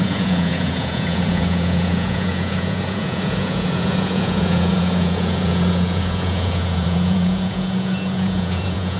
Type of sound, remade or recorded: remade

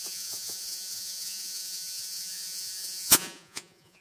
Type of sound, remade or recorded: remade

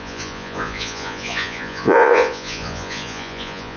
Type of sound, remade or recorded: remade